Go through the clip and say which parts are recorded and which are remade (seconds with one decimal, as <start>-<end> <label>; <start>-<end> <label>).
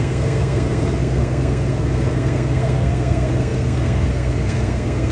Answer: 0.0-5.1 remade